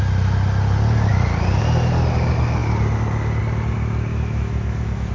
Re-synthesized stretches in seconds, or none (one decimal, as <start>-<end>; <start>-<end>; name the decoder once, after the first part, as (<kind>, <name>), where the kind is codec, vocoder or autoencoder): 4.1-5.1 (autoencoder, DAC-VAE)